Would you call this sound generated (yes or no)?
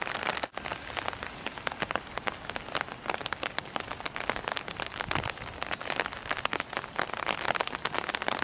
no